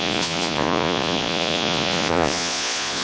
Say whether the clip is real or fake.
fake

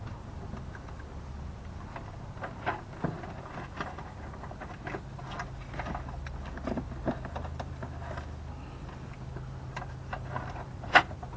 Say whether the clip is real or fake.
real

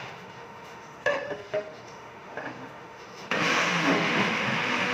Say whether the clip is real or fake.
fake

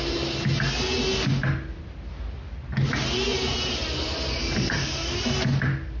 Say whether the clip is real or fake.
real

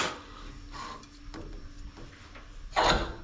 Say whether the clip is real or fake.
real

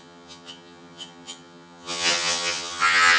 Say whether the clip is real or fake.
fake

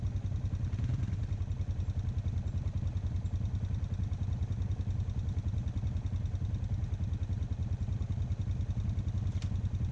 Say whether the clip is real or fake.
real